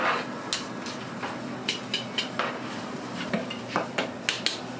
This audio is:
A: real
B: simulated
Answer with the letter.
A